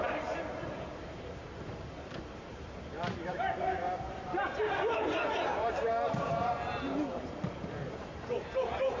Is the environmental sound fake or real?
fake